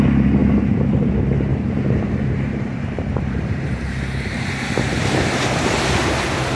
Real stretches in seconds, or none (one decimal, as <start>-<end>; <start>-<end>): 0.0-1.5; 5.5-6.6